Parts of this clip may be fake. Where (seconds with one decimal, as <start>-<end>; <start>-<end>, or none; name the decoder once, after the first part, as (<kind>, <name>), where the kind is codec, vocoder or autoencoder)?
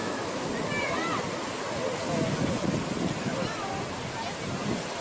0.0-0.5 (autoencoder, DAC-VAE)